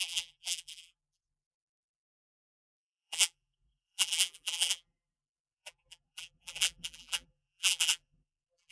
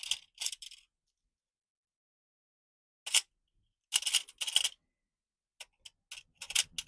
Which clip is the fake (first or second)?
first